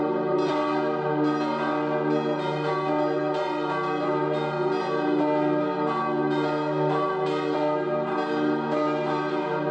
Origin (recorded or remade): recorded